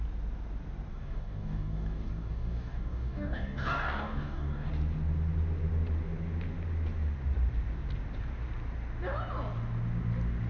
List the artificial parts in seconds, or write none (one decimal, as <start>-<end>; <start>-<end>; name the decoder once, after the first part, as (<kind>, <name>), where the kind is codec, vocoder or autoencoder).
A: 0.9-4.7 (codec, DAC)